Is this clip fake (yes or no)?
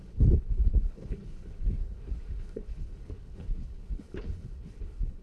yes